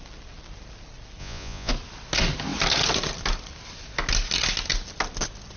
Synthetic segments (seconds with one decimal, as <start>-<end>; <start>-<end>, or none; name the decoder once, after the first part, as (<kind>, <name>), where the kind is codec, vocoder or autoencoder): 1.2-1.7 (vocoder, Vocos)